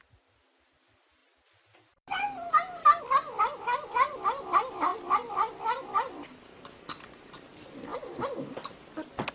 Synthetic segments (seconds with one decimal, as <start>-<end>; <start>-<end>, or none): none